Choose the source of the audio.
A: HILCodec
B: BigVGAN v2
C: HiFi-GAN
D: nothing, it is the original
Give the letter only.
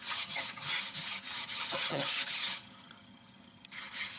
C